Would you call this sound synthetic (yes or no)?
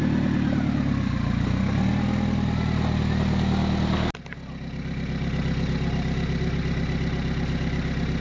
no